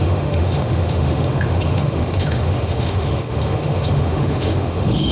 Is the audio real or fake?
fake